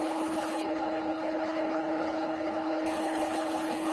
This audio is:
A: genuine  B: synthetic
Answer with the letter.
B